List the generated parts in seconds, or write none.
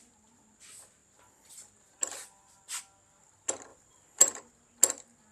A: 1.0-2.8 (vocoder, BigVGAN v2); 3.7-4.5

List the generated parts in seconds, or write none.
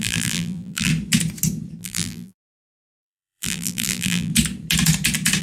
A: 0.0-0.9 (vocoder, BigVGAN v2); 1.8-4.3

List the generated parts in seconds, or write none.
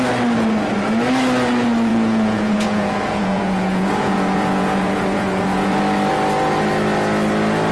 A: 1.9-5.8 (vocoder, Vocos)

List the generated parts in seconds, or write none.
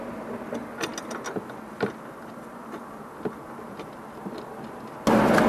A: none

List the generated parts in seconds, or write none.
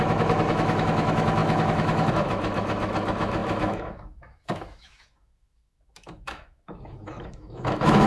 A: 0.0-8.1 (autoencoder, DAC-VAE)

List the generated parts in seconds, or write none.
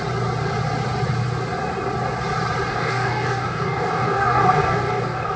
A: 2.7-5.4 (codec, DAC)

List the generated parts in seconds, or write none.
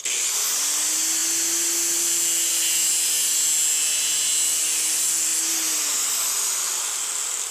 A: none